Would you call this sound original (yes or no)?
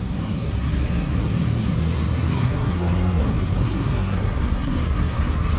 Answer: no